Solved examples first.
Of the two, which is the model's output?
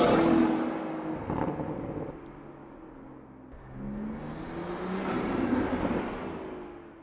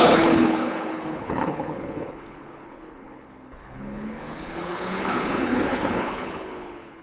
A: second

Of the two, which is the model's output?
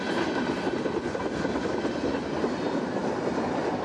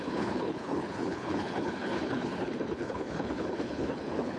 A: second